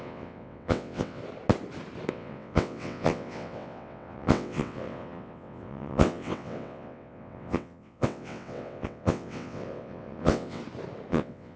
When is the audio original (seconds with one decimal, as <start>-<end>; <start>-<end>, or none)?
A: 1.2-2.1; 10.6-11.1